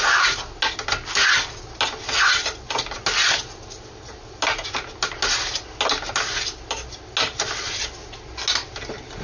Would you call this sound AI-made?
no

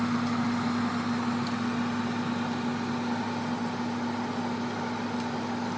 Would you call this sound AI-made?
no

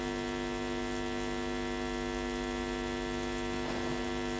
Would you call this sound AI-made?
no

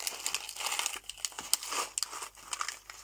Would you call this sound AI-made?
no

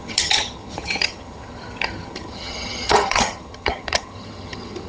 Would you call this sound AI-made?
yes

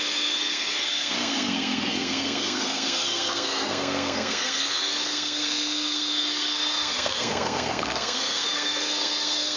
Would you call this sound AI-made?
yes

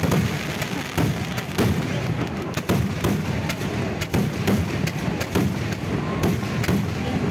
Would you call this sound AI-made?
no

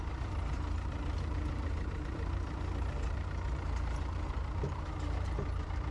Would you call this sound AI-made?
yes